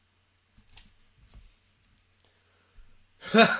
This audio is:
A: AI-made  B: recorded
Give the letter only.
B